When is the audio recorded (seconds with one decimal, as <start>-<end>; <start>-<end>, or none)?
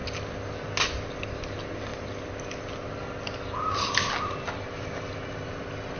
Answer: 0.0-6.0